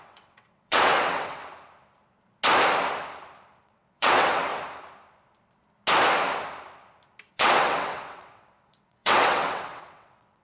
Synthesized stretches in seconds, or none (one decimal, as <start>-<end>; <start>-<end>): 0.0-1.4; 3.6-4.5; 7.3-10.4